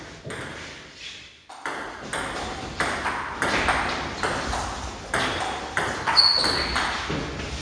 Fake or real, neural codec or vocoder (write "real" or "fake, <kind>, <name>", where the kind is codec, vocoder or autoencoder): real